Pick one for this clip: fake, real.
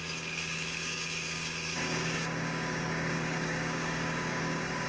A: fake